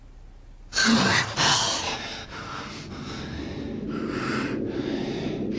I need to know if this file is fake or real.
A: real